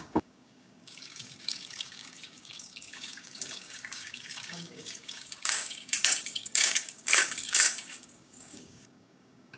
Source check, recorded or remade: remade